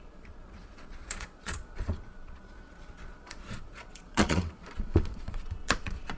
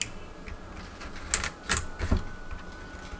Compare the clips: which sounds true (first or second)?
second